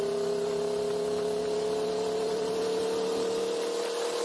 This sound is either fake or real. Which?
real